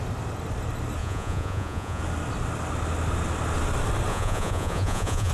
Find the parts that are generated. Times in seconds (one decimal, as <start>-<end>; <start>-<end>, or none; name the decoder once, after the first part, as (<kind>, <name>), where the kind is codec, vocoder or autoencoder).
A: 1.0-2.0 (vocoder, Vocos); 4.1-5.3